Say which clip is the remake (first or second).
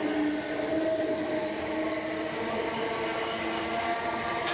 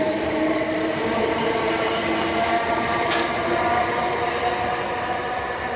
second